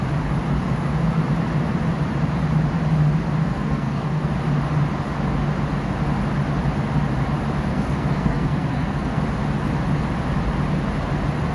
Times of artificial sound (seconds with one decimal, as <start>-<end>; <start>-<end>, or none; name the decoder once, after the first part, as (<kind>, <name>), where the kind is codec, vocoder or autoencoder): 3.4-4.3 (codec, SNAC); 7.7-9.2